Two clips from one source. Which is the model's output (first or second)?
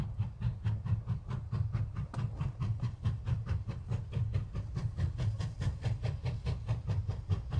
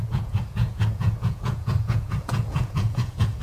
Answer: second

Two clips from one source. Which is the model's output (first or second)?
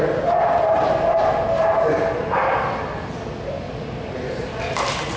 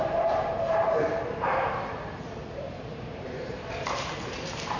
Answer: second